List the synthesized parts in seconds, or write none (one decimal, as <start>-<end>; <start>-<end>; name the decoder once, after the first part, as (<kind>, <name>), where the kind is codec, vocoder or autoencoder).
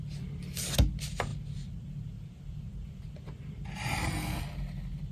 none